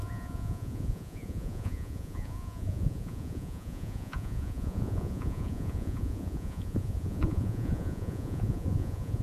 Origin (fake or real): fake